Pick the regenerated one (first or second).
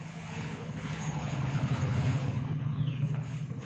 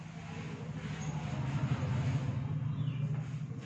first